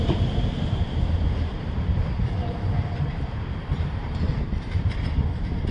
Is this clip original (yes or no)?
no